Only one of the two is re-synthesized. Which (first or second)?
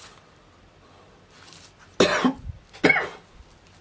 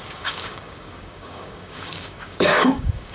second